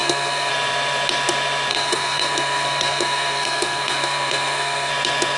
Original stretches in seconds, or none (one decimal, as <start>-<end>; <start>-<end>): 0.5-1.7; 4.9-5.4